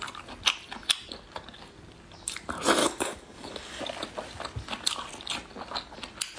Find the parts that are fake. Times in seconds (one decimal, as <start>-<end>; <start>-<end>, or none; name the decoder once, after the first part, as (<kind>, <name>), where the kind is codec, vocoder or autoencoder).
2.8-3.8 (codec, DAC)